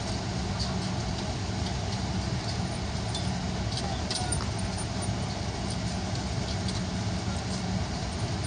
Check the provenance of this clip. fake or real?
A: real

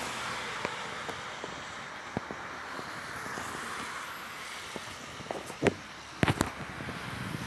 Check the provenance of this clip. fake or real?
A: real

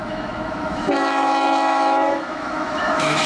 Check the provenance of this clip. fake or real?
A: fake